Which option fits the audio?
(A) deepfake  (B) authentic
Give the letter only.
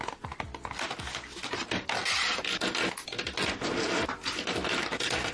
B